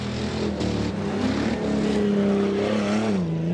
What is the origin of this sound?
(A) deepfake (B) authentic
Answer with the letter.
B